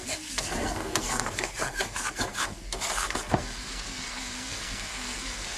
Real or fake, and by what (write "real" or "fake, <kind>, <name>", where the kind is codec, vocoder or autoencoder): fake, codec, SNAC